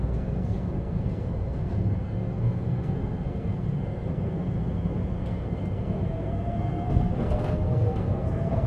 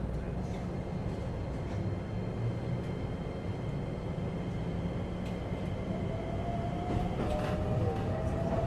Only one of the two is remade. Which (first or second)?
first